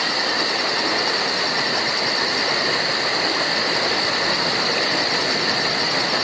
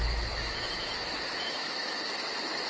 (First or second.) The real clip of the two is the first